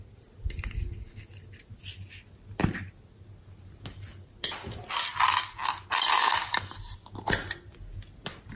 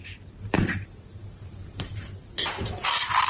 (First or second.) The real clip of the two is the first